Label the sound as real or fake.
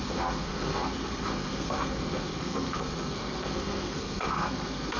fake